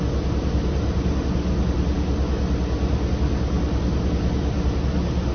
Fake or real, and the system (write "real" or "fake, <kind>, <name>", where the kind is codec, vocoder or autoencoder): real